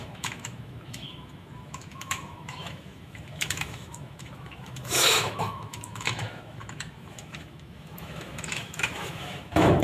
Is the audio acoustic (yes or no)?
no